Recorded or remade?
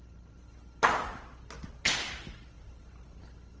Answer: recorded